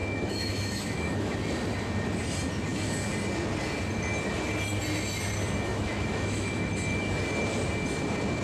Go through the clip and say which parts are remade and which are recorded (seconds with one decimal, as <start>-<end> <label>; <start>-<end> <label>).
0.0-1.4 remade; 1.4-5.7 recorded; 5.7-6.7 remade; 6.7-8.4 recorded